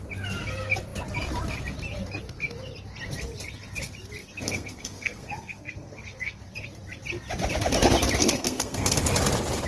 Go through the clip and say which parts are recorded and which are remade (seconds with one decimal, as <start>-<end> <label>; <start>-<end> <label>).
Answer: 0.0-4.2 recorded; 4.2-6.4 remade; 6.4-8.2 recorded; 8.2-9.0 remade; 9.0-9.7 recorded